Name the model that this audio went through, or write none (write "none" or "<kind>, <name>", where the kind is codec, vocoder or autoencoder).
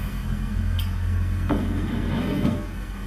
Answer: codec, SNAC